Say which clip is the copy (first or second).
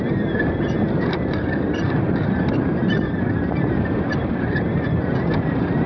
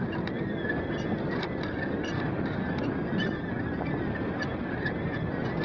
first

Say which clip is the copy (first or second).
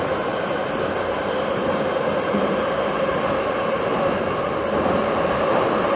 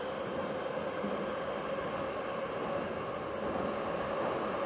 first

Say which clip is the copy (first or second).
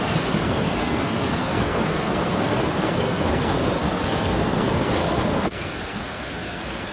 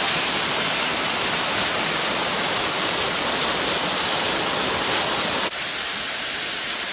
first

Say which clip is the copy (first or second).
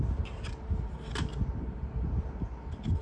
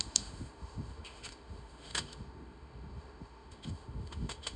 second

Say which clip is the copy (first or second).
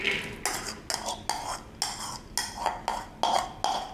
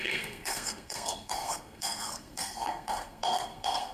second